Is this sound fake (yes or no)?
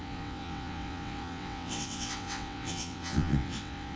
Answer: yes